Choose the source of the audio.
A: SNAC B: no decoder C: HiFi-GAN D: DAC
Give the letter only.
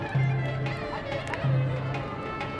B